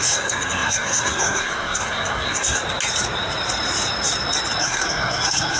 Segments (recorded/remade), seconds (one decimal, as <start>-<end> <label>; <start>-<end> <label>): 0.0-2.6 remade; 2.6-4.6 recorded; 4.6-5.6 remade